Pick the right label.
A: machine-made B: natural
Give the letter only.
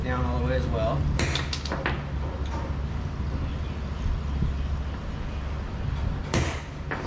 B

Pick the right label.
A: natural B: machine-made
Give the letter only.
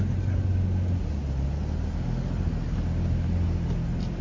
A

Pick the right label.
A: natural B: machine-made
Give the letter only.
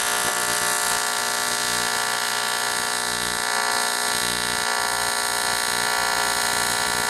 A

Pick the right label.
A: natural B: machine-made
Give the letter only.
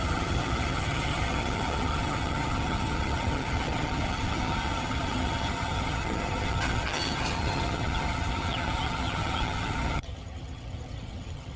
B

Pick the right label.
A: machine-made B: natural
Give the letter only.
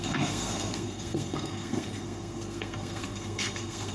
A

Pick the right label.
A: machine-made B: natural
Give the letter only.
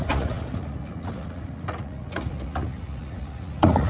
A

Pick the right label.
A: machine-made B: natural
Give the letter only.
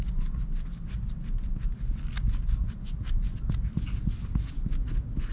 B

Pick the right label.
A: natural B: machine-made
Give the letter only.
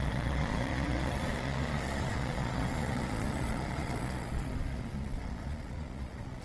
B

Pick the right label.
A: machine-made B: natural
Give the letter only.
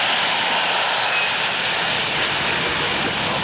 B